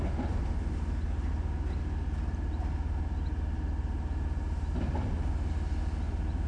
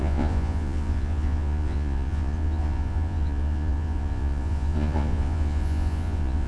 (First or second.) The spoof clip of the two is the second